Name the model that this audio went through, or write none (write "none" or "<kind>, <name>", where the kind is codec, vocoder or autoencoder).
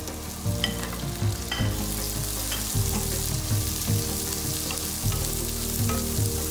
none